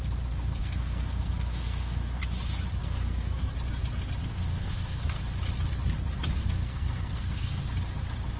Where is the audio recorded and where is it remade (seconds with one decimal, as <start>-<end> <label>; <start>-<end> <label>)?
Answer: 0.0-0.6 recorded; 0.6-2.2 remade; 2.2-2.8 recorded; 2.8-3.5 remade; 3.5-4.2 recorded; 4.2-5.2 remade; 5.2-6.4 recorded; 6.4-7.6 remade; 7.6-8.4 recorded